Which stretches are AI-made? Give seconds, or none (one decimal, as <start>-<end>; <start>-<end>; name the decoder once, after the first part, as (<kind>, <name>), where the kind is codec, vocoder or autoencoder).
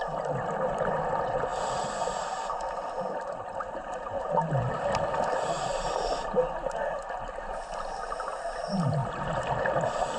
none